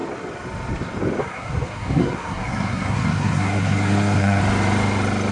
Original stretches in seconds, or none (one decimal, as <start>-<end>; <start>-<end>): 0.0-1.2; 4.4-5.3